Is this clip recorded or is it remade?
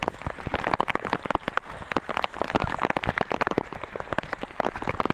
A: recorded